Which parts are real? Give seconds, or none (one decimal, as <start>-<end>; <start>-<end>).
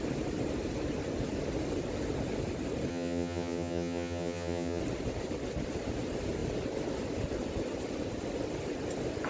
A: 0.0-2.9; 4.8-9.3